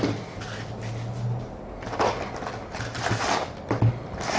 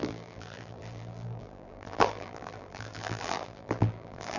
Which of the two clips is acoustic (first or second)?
first